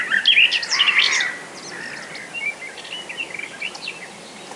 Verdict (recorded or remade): recorded